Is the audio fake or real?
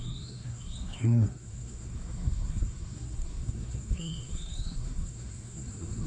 fake